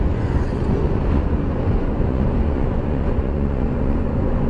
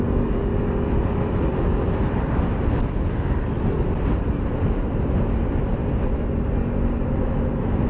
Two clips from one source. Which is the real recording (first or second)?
second